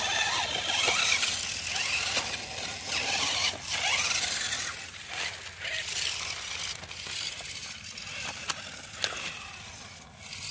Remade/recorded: recorded